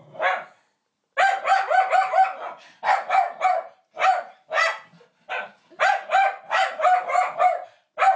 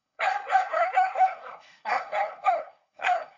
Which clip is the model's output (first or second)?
second